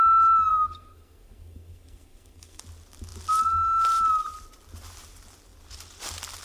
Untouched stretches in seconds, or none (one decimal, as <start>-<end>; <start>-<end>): 0.0-0.5; 2.6-6.4